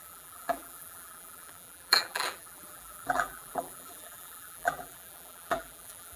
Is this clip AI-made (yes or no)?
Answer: yes